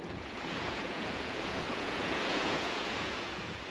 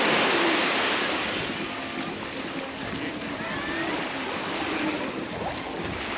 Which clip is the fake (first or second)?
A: first